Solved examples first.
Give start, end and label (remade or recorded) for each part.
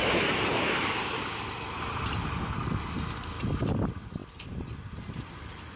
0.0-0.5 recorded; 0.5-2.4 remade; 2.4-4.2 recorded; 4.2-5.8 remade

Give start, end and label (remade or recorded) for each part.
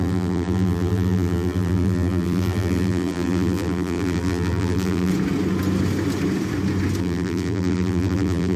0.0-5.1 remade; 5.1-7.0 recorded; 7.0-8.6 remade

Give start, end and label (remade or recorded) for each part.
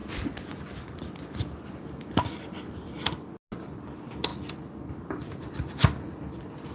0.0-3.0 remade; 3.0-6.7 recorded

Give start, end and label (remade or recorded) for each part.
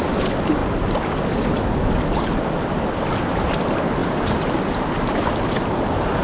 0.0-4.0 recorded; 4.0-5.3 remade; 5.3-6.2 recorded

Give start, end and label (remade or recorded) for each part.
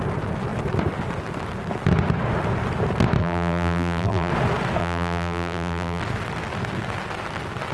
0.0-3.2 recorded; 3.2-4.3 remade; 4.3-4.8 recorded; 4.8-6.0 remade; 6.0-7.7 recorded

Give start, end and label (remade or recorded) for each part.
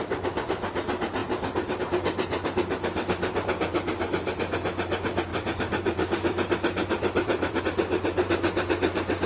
0.0-1.2 recorded; 1.2-1.8 remade; 1.8-5.3 recorded; 5.3-7.6 remade; 7.6-9.3 recorded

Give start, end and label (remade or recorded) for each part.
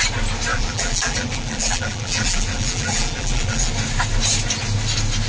0.0-0.5 recorded; 0.5-3.7 remade; 3.7-5.3 recorded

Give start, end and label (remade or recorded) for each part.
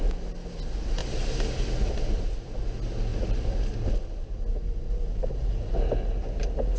0.0-1.0 recorded; 1.0-2.6 remade; 2.6-3.1 recorded; 3.1-3.7 remade; 3.7-6.8 recorded